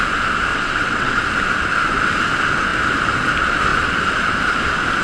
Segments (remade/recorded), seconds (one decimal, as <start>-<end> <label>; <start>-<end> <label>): 0.0-0.5 recorded; 0.5-1.2 remade; 1.2-5.0 recorded